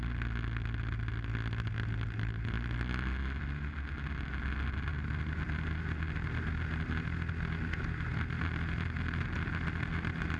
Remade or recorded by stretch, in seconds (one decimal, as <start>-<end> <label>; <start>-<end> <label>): 0.0-10.4 recorded